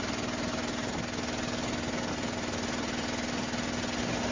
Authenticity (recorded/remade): recorded